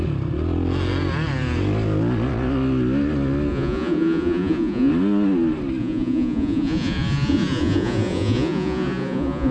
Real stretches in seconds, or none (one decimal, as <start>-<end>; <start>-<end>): 0.0-3.5; 4.9-5.8